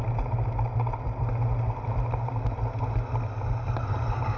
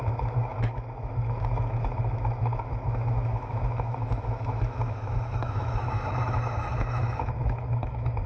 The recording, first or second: first